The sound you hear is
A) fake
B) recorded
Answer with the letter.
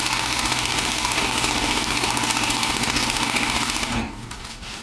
A